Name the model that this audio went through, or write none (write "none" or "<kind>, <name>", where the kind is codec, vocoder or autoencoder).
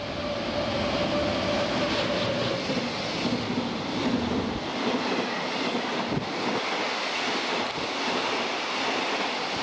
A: none